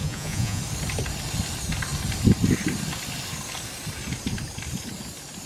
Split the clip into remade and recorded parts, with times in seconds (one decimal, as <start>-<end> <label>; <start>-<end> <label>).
0.0-0.6 remade; 0.6-5.5 recorded